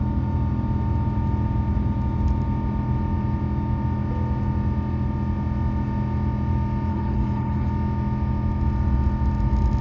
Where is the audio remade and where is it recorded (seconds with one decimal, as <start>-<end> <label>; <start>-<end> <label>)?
0.0-6.9 recorded; 6.9-7.7 remade; 7.7-9.8 recorded